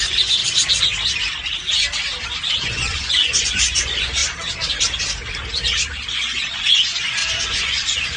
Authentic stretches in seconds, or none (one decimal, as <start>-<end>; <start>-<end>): 0.4-2.6; 4.2-6.1